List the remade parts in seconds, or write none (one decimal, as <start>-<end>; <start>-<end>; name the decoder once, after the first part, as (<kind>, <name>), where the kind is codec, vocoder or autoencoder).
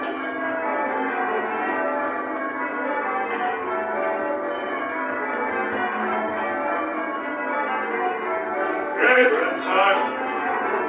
8.7-9.3 (codec, SNAC)